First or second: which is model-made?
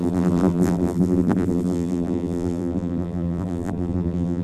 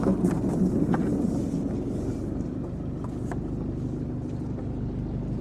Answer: first